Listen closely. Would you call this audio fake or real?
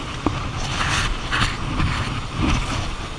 real